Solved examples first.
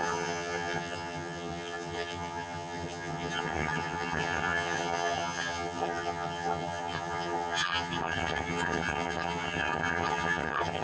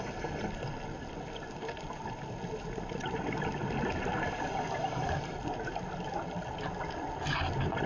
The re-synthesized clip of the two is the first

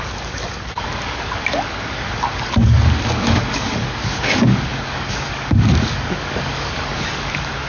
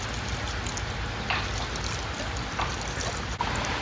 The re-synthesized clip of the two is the first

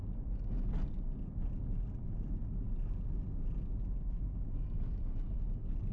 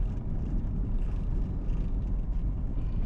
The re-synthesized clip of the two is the second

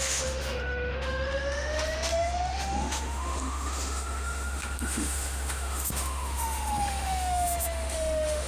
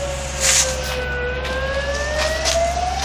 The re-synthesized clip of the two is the first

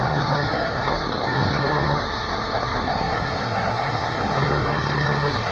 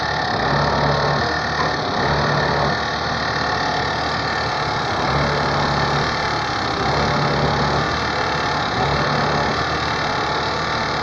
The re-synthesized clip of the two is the first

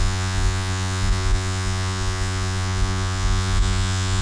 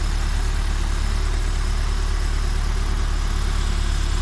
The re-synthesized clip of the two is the first